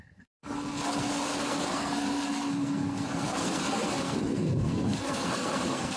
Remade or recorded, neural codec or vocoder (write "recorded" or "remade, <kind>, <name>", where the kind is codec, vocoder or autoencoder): remade, codec, SNAC